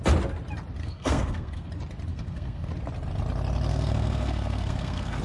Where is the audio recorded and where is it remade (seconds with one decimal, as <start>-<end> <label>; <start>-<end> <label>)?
0.0-0.8 recorded; 0.8-1.7 remade; 1.7-2.1 recorded; 2.1-2.7 remade; 2.7-3.7 recorded; 3.7-5.2 remade